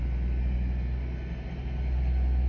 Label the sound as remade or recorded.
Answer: recorded